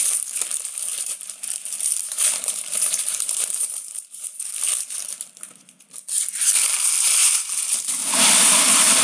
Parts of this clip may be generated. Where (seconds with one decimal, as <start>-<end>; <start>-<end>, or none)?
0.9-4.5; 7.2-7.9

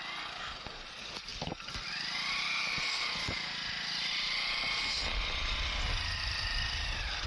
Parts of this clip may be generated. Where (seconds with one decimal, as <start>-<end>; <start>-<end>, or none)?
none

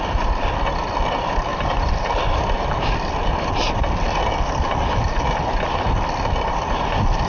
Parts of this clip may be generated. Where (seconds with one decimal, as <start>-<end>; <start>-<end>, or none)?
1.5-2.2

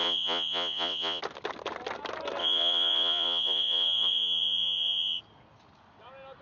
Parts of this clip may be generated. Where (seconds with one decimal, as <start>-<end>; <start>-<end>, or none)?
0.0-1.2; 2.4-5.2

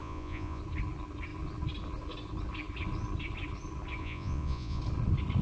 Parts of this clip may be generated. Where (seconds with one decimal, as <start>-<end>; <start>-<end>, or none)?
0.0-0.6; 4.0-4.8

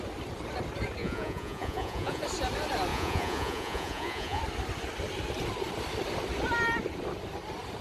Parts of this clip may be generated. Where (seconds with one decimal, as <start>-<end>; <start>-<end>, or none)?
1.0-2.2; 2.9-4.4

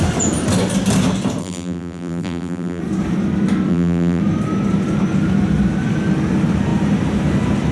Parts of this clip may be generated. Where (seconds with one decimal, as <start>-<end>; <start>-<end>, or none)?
1.4-2.8; 3.7-4.2